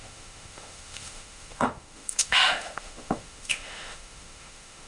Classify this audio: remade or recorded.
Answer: remade